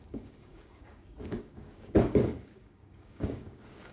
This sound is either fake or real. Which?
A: fake